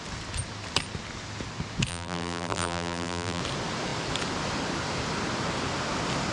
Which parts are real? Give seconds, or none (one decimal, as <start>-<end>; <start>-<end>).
0.0-1.9; 3.4-6.3